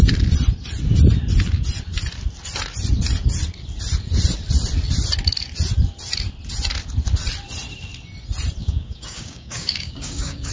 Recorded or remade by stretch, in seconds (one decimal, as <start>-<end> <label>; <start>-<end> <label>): 0.0-8.6 recorded; 8.6-10.5 remade